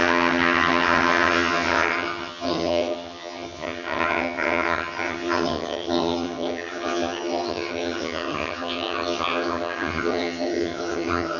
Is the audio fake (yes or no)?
yes